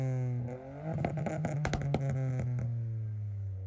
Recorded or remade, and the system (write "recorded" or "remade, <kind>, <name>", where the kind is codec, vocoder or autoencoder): recorded